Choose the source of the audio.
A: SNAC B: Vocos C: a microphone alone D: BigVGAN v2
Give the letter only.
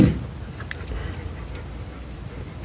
D